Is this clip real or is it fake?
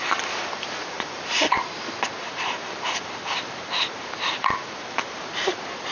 fake